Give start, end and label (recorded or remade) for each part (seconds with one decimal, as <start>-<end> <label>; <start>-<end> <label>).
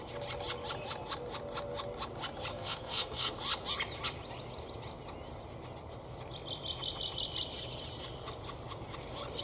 0.0-2.5 recorded; 2.5-3.4 remade; 3.4-9.4 recorded